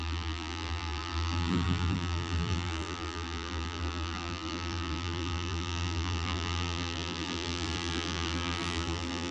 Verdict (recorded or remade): remade